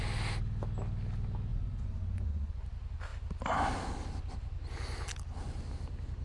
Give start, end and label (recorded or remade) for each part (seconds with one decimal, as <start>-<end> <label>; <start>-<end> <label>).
0.0-1.5 recorded; 1.5-2.5 remade; 2.5-6.2 recorded